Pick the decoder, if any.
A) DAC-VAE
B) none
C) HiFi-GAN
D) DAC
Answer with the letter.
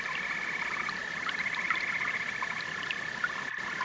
B